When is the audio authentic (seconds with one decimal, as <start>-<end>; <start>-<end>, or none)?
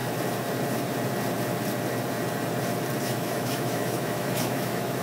0.0-3.0